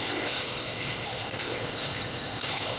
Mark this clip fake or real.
fake